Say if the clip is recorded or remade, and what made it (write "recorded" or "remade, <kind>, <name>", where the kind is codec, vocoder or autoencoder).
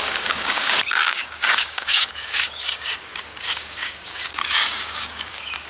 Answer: remade, codec, DAC